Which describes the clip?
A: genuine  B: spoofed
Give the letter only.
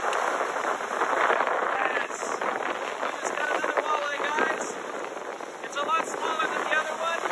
A